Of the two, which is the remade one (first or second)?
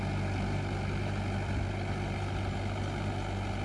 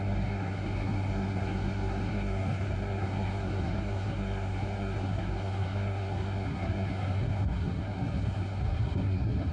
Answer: second